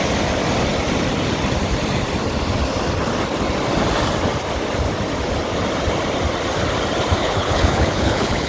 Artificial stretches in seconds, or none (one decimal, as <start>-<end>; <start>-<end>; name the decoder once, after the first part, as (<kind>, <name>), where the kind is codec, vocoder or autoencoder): 7.2-8.5 (codec, HILCodec)